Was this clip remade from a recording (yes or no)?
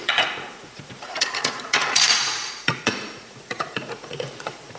yes